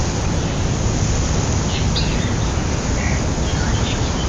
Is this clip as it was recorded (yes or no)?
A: yes